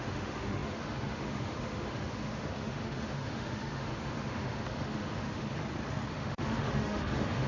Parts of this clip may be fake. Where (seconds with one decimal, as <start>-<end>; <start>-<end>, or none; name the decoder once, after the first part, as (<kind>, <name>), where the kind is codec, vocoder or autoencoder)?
0.0-5.6 (autoencoder, DAC-VAE); 6.1-7.5